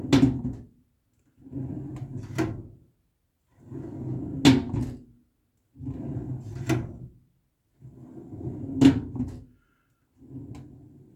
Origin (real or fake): real